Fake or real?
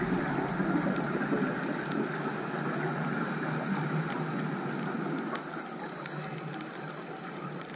real